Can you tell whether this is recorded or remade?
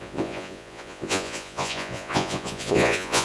remade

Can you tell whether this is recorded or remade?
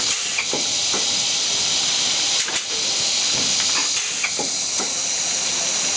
recorded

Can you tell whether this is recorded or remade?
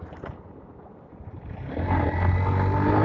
recorded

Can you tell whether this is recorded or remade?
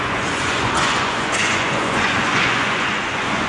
remade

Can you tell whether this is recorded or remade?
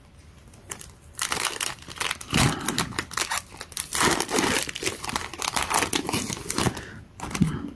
remade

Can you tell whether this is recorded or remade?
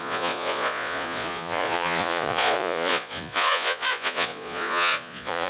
remade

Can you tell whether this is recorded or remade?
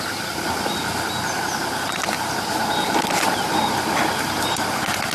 recorded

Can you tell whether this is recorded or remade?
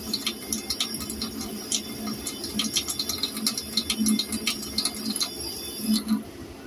recorded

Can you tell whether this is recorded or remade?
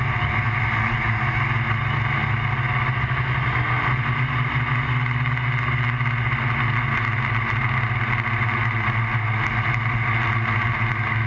recorded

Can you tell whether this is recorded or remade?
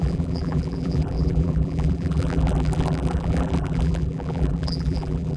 remade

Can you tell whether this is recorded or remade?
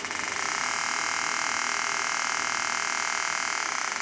recorded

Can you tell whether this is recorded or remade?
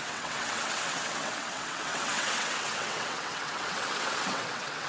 remade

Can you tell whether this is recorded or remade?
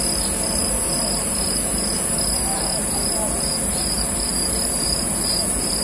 remade